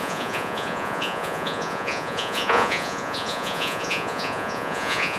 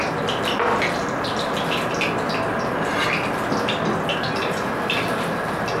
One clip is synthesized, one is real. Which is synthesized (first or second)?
first